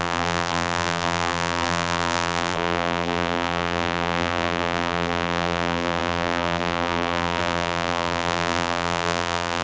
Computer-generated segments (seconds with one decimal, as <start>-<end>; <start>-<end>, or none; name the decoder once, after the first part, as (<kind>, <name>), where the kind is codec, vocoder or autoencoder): 0.0-9.6 (vocoder, BigVGAN v2)